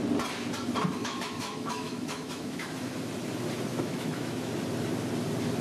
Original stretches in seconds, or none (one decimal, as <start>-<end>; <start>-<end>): 0.0-1.0; 2.9-3.7; 4.5-5.6